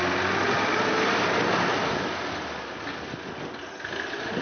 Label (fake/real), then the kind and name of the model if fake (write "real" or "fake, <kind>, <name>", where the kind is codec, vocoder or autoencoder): real